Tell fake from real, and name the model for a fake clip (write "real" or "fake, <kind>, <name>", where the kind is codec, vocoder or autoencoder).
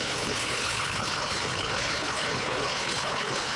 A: fake, codec, HILCodec